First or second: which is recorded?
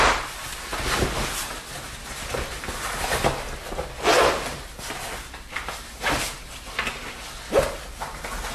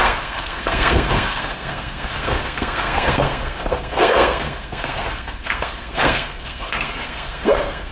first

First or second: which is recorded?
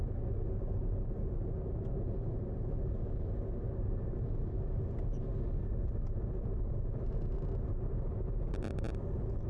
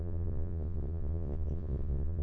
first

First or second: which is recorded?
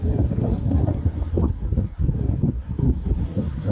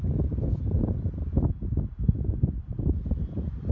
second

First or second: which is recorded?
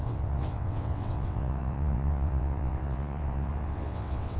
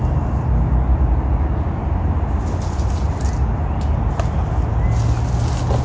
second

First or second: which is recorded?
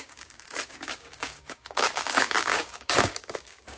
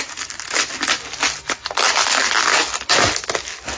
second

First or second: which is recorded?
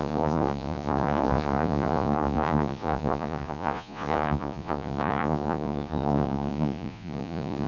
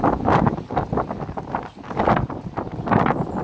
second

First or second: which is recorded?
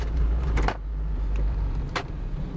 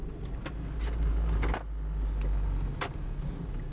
second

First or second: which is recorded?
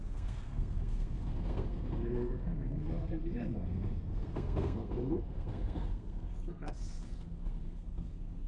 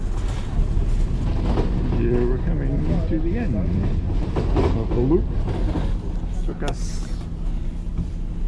second